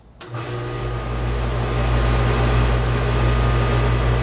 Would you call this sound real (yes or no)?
yes